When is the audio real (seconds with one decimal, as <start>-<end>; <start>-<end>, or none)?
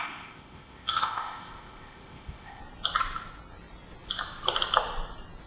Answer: 2.6-5.5